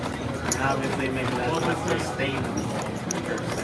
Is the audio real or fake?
fake